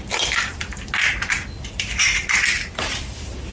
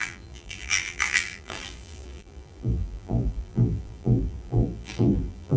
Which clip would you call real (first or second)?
first